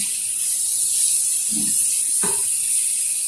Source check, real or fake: real